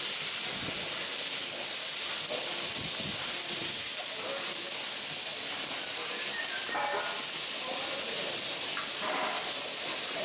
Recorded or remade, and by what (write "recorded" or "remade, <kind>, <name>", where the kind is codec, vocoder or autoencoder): recorded